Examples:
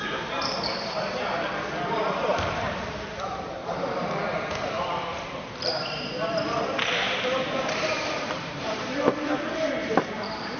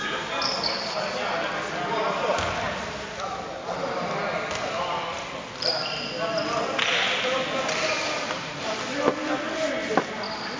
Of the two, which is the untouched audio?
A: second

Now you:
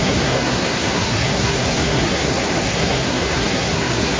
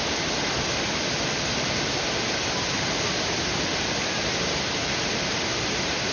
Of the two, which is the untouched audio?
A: second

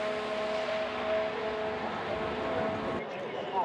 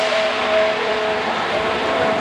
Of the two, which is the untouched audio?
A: first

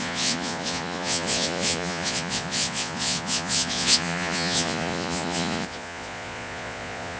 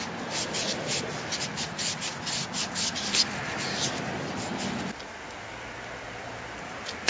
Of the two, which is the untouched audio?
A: second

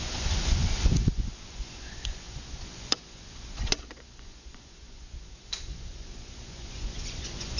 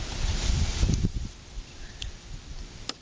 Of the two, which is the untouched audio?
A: second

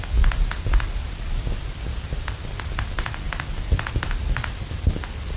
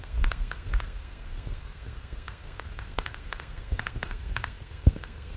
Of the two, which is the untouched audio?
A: first